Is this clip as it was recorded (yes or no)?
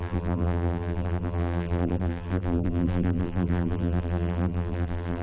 no